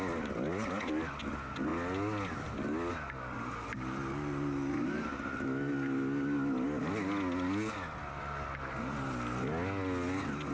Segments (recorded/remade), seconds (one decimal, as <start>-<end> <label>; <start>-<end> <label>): 0.0-10.5 recorded